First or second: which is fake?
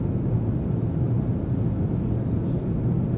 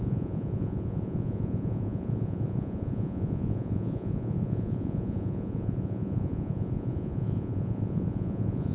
second